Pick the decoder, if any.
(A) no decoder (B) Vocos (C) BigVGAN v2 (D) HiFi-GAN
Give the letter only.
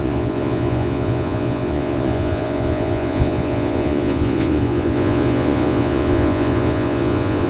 B